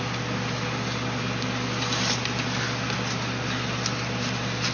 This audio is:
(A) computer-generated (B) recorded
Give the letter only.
B